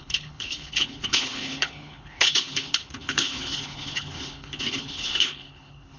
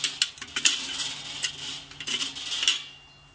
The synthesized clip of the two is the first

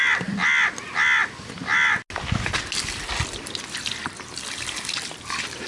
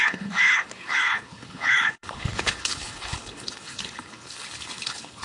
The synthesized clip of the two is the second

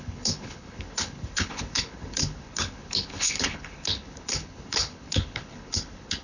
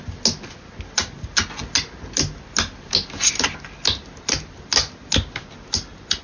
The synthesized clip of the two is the first